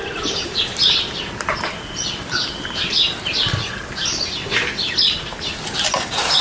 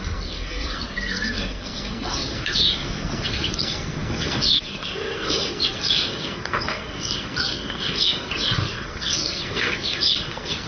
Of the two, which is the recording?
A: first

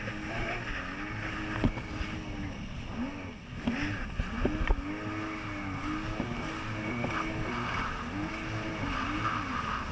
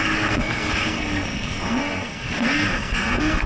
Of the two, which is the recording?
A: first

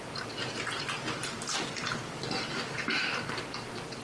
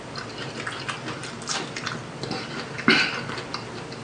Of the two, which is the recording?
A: second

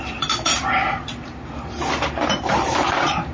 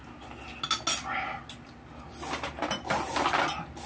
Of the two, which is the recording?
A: second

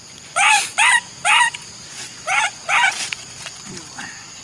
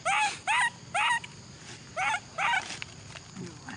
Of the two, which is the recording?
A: second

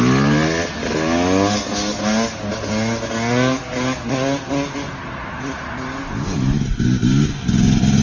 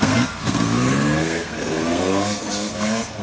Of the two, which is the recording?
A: first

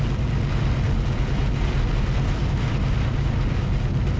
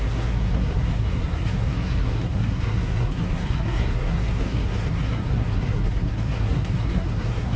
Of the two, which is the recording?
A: first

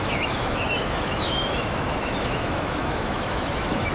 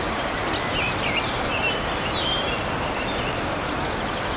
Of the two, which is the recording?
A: second